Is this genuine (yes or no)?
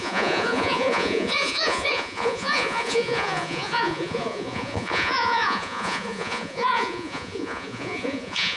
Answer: no